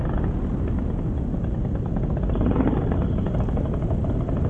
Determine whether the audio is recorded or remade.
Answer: recorded